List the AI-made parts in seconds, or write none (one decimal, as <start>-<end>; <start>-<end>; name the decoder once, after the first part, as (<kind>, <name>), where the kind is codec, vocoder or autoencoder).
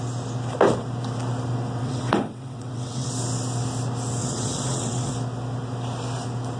1.8-3.1 (vocoder, WaveNeXt); 4.2-5.1